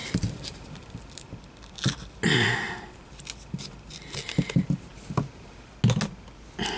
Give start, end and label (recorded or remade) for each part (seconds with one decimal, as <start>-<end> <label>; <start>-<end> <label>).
0.0-6.8 recorded